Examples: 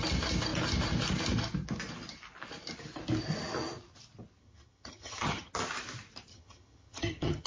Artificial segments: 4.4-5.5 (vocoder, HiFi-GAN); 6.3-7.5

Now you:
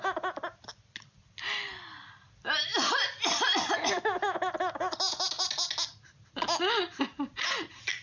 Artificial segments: none

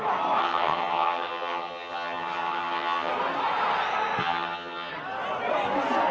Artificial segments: 0.4-3.1 (vocoder, HiFi-GAN); 4.2-4.9

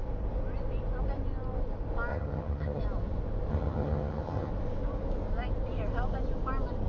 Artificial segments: 2.1-2.8 (vocoder, HiFi-GAN); 3.5-4.5

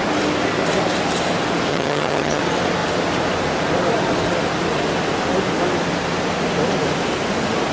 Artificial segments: 1.7-2.4 (vocoder, HiFi-GAN)

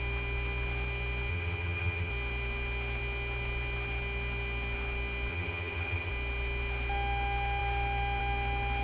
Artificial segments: 1.3-2.1 (vocoder, HiFi-GAN); 5.3-6.1